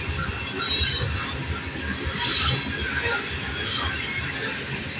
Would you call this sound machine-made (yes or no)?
no